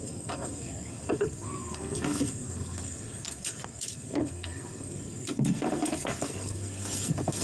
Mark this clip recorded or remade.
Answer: remade